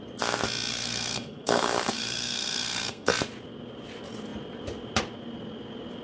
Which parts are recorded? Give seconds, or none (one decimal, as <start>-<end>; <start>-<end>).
0.0-0.7; 3.1-6.0